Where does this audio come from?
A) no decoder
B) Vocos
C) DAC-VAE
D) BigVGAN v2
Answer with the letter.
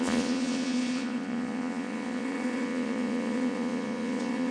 B